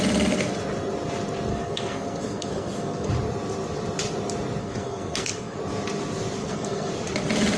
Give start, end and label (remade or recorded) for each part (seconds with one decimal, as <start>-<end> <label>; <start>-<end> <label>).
0.0-1.5 recorded; 1.5-3.1 remade; 3.1-4.6 recorded; 4.6-5.6 remade; 5.6-6.4 recorded; 6.4-6.9 remade; 6.9-7.6 recorded